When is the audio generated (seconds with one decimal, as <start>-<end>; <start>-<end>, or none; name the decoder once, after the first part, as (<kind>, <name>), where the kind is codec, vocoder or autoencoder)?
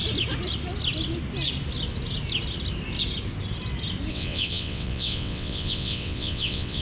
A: 4.1-6.8 (vocoder, WaveNeXt)